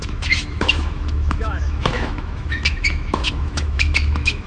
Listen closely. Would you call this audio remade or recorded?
remade